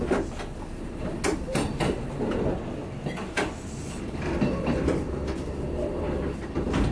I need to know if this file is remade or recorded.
recorded